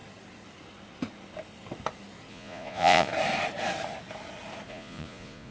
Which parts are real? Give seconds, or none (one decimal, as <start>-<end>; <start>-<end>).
0.0-2.3; 3.1-4.7